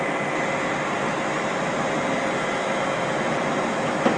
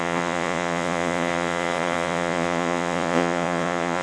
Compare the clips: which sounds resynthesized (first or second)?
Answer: second